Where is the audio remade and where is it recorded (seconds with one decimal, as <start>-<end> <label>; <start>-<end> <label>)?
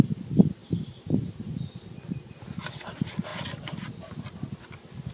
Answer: 0.0-0.6 recorded; 0.6-1.7 remade; 1.7-5.1 recorded